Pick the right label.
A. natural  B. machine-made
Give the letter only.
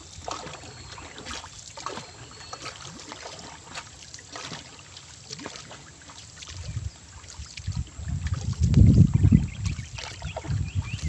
A